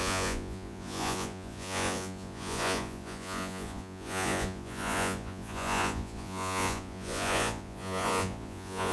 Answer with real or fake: fake